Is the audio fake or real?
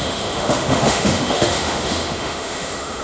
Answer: fake